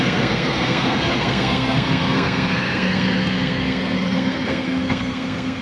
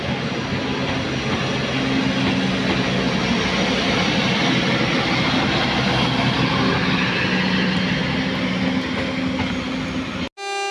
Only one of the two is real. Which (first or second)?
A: second